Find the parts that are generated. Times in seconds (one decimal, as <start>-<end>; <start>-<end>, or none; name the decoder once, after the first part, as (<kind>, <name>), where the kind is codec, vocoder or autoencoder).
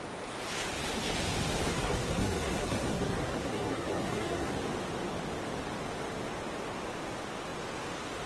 1.7-4.5 (codec, SNAC)